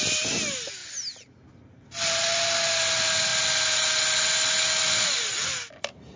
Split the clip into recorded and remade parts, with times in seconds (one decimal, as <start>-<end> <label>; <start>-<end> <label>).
0.0-6.2 recorded